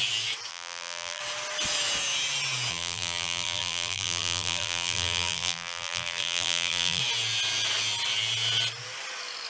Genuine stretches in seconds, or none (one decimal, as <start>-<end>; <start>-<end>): 0.0-0.5; 1.2-2.7; 7.0-9.5